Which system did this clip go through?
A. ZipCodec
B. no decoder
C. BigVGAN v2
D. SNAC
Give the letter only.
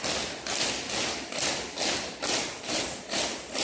B